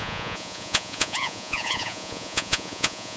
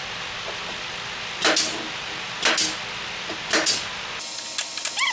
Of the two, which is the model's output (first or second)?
first